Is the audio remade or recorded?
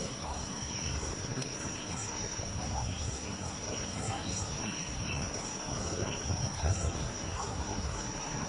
remade